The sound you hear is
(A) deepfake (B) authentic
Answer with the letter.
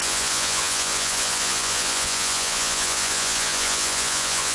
A